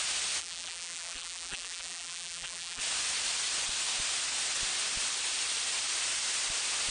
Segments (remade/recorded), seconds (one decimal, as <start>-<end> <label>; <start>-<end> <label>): 0.0-0.4 recorded; 0.4-2.8 remade; 2.8-6.9 recorded